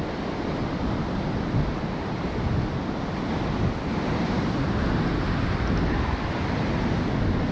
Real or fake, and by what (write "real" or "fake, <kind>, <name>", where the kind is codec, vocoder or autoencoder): real